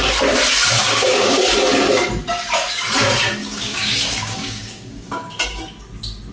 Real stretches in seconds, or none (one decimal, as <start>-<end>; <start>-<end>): 0.0-0.8; 1.4-3.4; 5.6-6.3